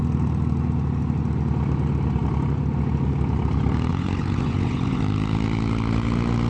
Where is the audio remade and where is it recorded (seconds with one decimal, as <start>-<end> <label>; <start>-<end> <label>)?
0.0-3.9 recorded; 3.9-5.0 remade; 5.0-6.5 recorded